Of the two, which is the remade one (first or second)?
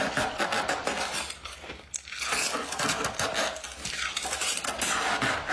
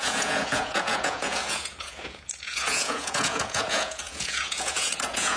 second